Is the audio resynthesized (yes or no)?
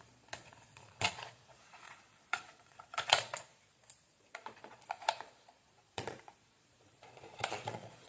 yes